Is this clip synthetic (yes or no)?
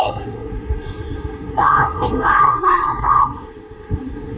yes